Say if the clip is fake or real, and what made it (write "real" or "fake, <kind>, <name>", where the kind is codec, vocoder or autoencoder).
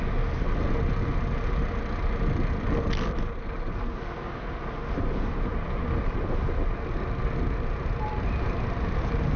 real